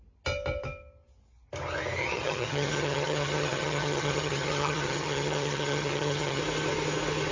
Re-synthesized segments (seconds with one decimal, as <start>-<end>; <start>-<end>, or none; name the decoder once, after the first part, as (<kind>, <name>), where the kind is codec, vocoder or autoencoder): 2.0-6.4 (vocoder, HiFi-GAN)